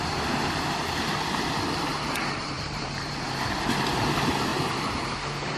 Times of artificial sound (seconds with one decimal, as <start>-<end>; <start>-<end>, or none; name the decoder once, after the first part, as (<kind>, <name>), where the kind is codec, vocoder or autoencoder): 1.9-3.7 (vocoder, BigVGAN v2); 4.5-5.6